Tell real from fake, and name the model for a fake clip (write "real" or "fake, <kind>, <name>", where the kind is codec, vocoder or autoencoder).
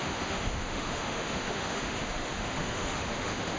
fake, autoencoder, DAC-VAE